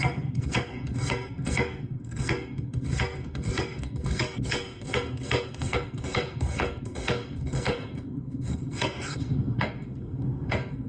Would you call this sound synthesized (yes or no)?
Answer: yes